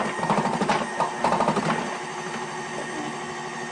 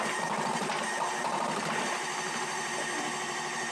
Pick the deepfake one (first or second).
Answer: second